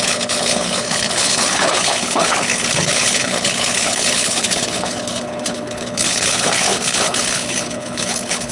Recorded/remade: remade